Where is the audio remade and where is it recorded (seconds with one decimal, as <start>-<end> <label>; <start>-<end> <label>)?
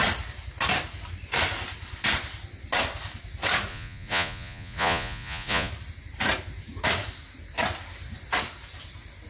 0.0-3.7 recorded; 3.7-5.7 remade; 5.7-9.3 recorded